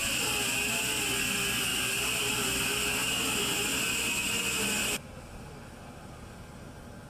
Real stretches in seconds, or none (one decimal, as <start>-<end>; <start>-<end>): 0.9-1.7; 2.3-7.1